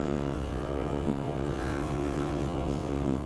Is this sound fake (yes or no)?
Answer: yes